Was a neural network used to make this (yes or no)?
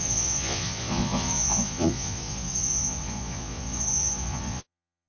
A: yes